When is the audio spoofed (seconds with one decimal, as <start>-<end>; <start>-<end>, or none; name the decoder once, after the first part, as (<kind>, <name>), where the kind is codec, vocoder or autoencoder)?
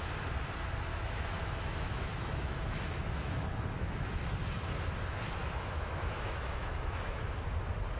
0.9-4.2 (autoencoder, DAC-VAE); 5.4-7.2